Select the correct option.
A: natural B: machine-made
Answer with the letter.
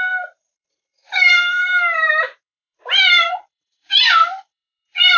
B